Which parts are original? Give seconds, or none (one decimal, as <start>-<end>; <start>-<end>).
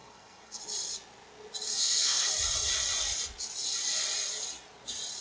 0.6-1.7; 2.3-5.2